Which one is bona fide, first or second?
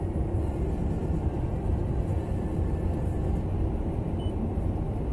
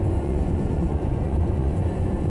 first